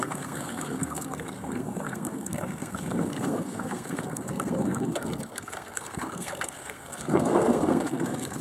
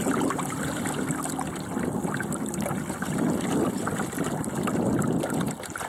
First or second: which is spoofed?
first